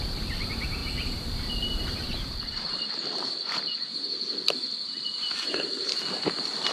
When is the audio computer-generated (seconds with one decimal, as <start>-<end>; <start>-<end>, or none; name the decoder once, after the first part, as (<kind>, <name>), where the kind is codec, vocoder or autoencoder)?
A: 0.8-3.9 (vocoder, BigVGAN v2)